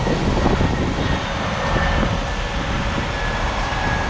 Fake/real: real